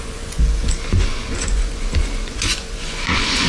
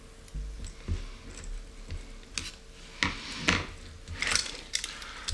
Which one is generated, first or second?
first